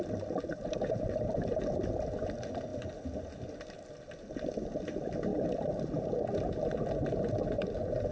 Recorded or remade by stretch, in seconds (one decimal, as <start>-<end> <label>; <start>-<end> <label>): 0.0-0.5 recorded; 0.5-1.6 remade; 1.6-5.3 recorded; 5.3-5.8 remade; 5.8-8.1 recorded